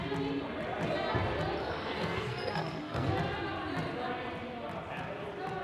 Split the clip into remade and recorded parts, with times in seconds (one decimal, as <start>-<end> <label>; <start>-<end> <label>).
0.0-1.6 recorded; 1.6-3.1 remade; 3.1-5.6 recorded